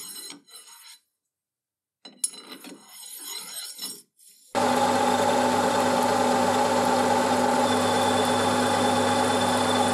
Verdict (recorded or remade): recorded